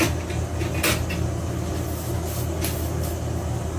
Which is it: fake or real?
real